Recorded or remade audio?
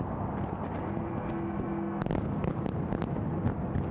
recorded